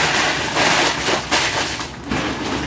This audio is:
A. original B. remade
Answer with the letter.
A